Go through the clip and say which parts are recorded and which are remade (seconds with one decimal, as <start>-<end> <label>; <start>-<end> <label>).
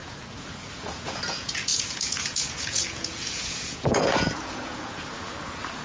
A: 0.0-5.8 remade